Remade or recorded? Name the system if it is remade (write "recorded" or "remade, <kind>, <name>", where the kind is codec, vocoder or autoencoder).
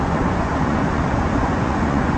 remade, vocoder, Vocos